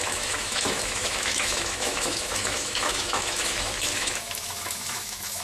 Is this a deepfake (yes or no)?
yes